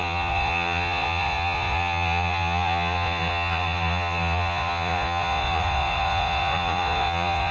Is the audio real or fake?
fake